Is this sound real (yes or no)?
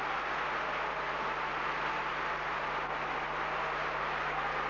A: yes